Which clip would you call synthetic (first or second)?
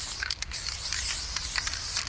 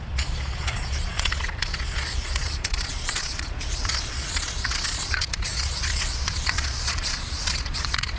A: second